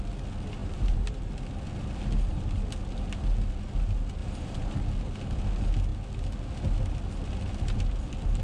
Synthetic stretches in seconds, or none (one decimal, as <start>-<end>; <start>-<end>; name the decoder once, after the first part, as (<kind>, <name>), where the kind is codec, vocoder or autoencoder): 0.6-1.3 (vocoder, BigVGAN v2); 4.2-4.8